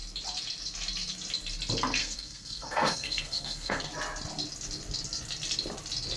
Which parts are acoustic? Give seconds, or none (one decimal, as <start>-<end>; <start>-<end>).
0.0-2.0; 3.9-6.2